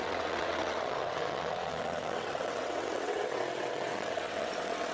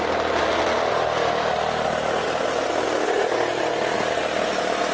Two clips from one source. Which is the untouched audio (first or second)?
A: second